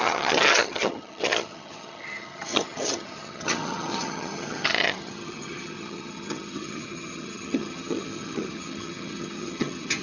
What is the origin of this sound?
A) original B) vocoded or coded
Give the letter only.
B